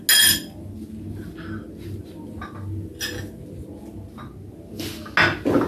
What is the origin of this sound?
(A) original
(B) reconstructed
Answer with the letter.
A